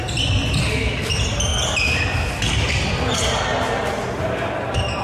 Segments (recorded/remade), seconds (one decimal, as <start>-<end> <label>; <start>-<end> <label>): 0.0-5.0 recorded